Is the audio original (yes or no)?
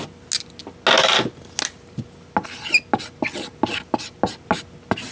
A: yes